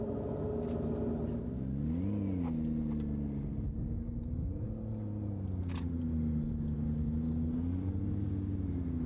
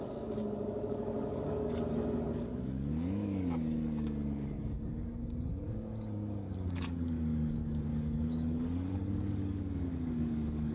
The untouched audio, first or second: first